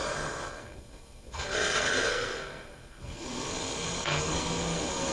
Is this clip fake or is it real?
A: fake